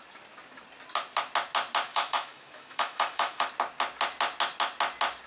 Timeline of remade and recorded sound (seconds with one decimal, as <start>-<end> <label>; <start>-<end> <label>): 0.0-1.9 recorded; 1.9-3.5 remade; 3.5-5.3 recorded